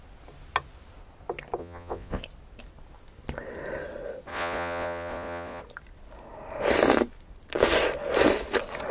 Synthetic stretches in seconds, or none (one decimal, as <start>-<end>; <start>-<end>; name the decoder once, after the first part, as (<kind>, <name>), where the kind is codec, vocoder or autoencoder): 1.6-2.2 (vocoder, Vocos); 4.3-5.6